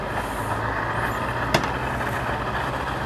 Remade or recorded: recorded